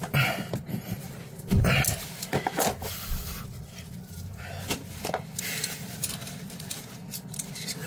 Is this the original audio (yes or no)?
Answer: yes